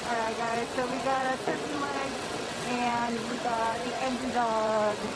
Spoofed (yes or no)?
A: yes